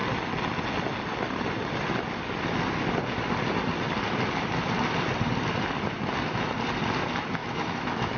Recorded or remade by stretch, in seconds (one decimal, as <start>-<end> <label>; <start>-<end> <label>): 0.0-7.4 recorded; 7.4-8.2 remade